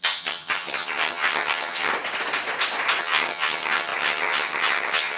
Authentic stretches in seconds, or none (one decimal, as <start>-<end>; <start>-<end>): 1.9-3.0